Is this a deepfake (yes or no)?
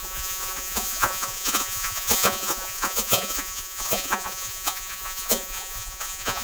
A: yes